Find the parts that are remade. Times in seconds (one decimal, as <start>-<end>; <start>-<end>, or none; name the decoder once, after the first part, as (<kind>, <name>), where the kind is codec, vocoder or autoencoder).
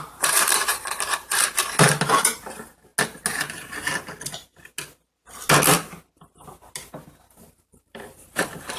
0.0-2.9 (vocoder, BigVGAN v2); 7.4-8.8